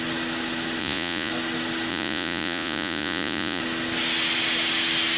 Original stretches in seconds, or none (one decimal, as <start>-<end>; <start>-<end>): 0.0-0.8; 1.3-1.9; 3.6-5.2

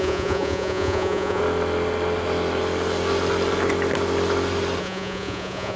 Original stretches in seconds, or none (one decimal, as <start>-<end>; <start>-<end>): 1.4-4.8